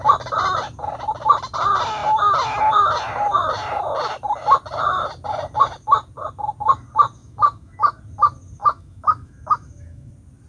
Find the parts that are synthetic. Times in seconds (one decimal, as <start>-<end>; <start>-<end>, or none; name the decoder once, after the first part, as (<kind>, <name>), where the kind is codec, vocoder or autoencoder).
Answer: 7.2-8.0 (autoencoder, DAC-VAE); 8.6-10.1

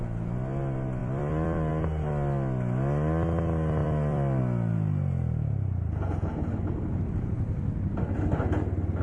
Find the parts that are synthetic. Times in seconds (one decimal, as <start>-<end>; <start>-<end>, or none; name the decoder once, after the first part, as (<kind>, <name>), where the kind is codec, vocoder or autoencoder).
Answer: 1.0-1.7 (vocoder, BigVGAN v2); 3.8-4.4

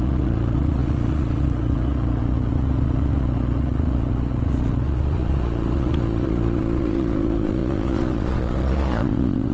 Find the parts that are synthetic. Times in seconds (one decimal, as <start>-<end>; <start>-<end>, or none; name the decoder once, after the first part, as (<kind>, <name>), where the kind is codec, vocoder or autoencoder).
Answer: 0.0-9.5 (vocoder, Vocos)

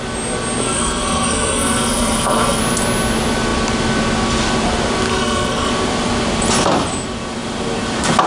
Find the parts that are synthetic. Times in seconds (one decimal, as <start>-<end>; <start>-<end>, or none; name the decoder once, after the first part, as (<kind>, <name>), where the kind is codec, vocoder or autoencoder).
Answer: 0.6-2.6 (codec, SNAC); 5.1-5.7

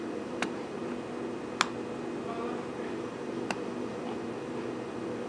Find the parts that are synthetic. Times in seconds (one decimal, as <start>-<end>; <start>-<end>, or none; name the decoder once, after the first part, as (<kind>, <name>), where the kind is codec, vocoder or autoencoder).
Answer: 0.0-0.8 (vocoder, BigVGAN v2); 2.7-5.3